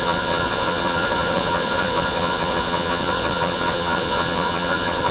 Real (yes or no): no